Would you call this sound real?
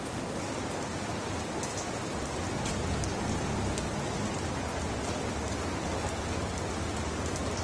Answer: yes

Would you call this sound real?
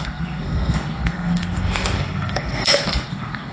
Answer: no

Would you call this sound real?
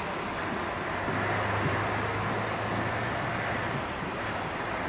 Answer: yes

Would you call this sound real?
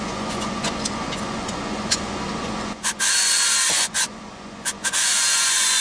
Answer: no